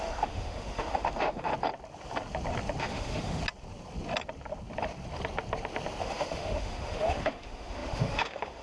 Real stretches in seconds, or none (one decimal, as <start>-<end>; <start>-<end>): 1.5-2.8; 3.4-6.0